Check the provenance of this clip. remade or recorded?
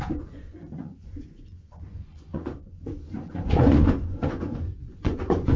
remade